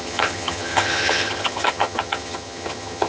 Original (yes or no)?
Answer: no